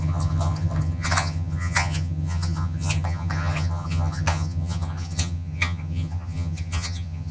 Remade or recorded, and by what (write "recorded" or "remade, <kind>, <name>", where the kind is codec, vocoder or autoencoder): remade, vocoder, HiFi-GAN